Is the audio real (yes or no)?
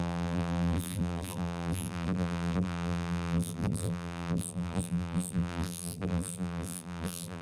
no